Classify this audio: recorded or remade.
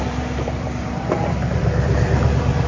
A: remade